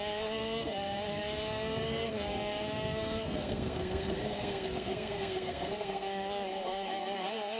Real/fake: fake